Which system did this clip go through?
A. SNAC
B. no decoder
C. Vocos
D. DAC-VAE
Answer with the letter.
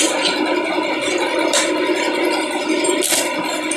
B